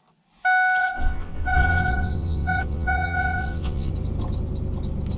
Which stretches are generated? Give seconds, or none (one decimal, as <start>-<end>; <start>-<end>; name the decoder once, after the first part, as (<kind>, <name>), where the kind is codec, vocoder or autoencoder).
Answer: 0.8-3.9 (vocoder, WaveNeXt)